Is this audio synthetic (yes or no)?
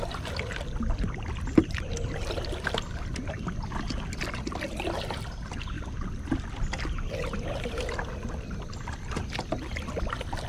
no